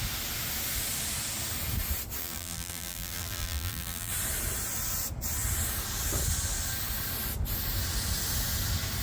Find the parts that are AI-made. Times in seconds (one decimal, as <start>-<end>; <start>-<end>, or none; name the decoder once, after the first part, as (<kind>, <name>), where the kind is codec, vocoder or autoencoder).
2.2-4.1 (vocoder, BigVGAN v2)